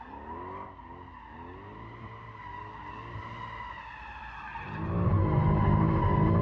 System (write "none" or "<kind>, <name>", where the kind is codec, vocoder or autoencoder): none